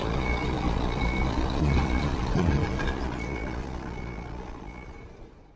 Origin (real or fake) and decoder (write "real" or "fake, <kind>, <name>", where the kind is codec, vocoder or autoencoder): fake, vocoder, Vocos